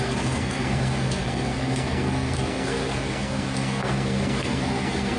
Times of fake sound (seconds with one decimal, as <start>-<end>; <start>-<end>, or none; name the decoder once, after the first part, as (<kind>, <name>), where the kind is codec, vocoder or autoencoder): 0.0-5.2 (codec, SNAC)